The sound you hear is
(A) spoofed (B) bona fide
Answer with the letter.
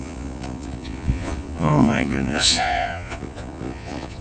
A